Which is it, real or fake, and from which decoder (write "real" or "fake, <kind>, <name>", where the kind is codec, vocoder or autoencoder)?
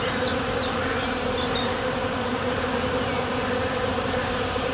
fake, vocoder, BigVGAN v2